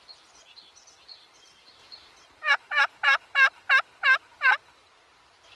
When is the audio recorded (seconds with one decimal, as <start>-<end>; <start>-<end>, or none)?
0.0-1.1; 3.7-4.3